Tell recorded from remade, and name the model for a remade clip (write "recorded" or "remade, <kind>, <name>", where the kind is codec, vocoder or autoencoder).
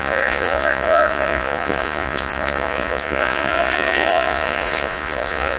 remade, vocoder, Vocos